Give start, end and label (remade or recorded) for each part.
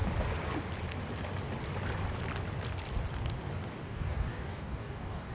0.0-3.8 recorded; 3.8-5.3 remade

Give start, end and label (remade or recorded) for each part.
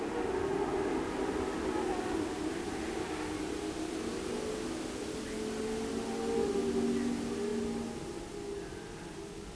0.0-9.6 recorded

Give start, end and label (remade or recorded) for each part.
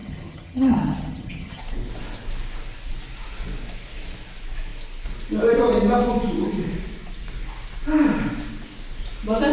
0.0-1.6 remade; 1.6-9.5 recorded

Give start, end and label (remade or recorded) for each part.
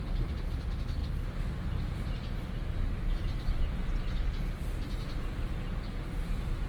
0.0-6.7 recorded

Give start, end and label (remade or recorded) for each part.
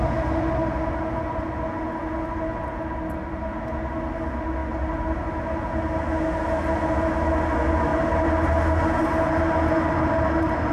0.0-7.9 recorded; 7.9-10.7 remade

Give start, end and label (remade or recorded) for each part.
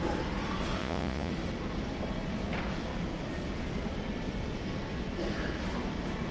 0.0-0.8 recorded; 0.8-1.3 remade; 1.3-6.3 recorded